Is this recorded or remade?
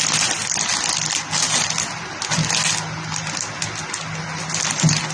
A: recorded